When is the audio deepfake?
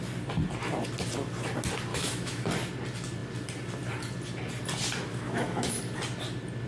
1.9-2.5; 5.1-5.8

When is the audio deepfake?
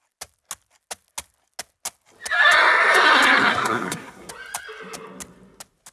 3.5-4.3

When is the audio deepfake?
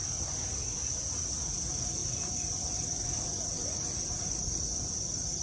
1.3-5.4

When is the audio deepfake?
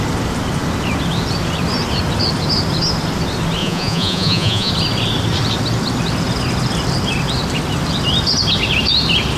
3.6-4.7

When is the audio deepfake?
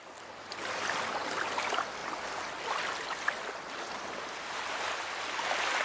none